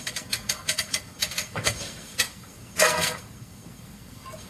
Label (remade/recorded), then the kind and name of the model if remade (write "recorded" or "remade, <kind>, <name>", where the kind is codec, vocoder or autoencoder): remade, codec, SNAC